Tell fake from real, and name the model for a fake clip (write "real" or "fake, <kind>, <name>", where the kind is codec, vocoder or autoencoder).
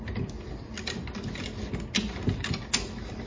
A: real